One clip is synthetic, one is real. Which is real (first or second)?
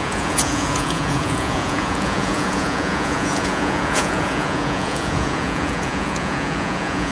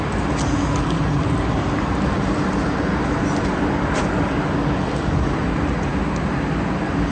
second